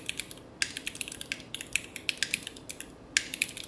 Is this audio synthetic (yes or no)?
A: no